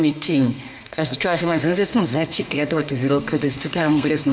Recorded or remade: remade